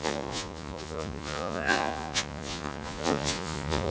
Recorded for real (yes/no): no